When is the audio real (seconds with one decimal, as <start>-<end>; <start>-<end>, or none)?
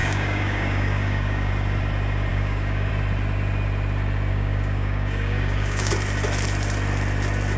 1.5-2.3; 2.9-4.3; 5.9-7.6